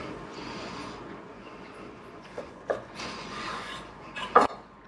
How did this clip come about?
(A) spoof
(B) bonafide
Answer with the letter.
A